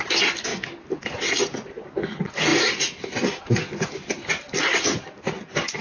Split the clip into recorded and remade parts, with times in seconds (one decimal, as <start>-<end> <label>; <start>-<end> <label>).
0.0-5.8 recorded